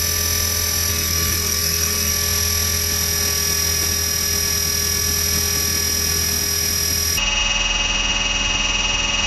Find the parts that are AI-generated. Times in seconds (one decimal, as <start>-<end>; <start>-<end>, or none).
0.9-2.1